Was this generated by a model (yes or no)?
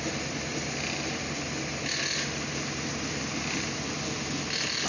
no